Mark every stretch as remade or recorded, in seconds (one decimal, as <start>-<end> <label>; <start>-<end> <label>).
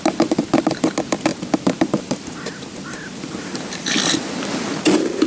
0.0-1.3 recorded; 1.3-4.5 remade; 4.5-5.3 recorded